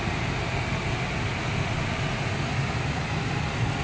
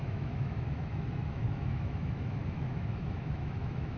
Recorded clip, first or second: first